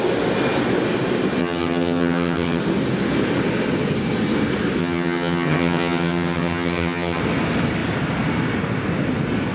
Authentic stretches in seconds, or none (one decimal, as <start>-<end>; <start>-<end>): 0.0-1.4; 2.6-4.8; 7.2-9.5